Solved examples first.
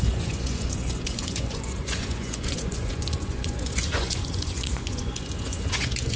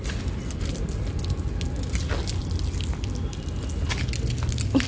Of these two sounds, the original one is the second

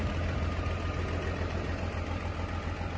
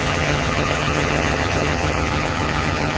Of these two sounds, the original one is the first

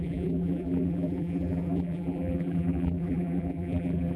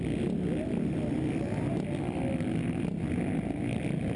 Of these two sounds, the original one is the second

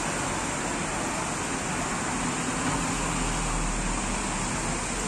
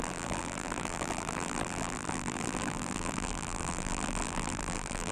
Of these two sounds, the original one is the first